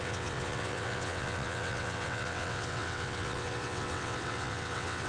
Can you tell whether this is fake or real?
fake